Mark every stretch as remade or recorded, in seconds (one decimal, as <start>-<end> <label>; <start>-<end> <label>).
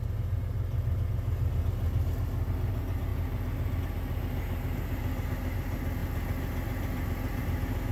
0.0-7.9 recorded